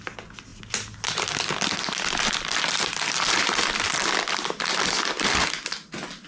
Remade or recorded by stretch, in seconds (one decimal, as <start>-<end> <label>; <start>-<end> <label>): 0.0-6.3 recorded